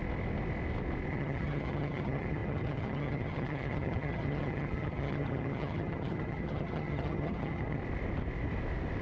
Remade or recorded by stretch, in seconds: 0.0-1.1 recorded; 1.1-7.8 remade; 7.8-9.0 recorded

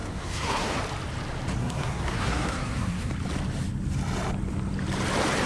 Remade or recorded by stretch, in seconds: 0.0-0.8 remade; 0.8-1.6 recorded; 1.6-3.1 remade; 3.1-5.5 recorded

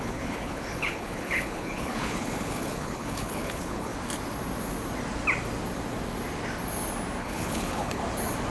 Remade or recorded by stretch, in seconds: 0.0-3.9 remade; 3.9-7.2 recorded; 7.2-8.0 remade; 8.0-8.5 recorded